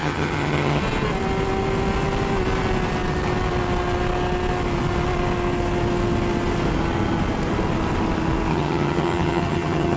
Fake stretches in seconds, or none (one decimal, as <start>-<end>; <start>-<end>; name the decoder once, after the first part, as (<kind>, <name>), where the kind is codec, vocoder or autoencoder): 0.0-0.8 (vocoder, HiFi-GAN); 8.5-10.0